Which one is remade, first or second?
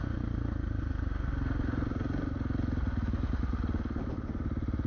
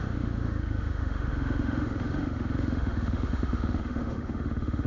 second